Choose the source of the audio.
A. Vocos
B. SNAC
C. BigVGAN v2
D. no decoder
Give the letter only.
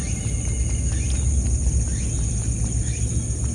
D